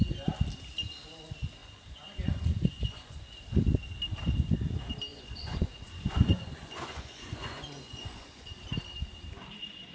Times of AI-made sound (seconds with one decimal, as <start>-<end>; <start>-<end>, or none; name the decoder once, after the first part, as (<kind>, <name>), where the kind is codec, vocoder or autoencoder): 1.6-3.2 (vocoder, Vocos); 5.1-8.5